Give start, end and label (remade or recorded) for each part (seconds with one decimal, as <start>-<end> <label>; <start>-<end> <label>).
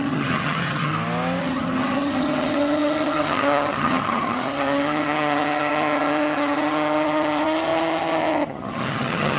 0.0-0.9 remade; 0.9-1.4 recorded; 1.4-9.4 remade